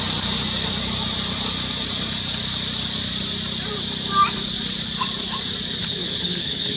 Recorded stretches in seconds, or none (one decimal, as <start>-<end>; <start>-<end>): 0.0-5.8